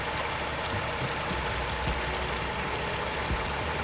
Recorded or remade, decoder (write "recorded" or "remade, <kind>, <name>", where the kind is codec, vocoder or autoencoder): recorded